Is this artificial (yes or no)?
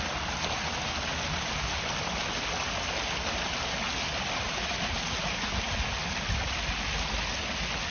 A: no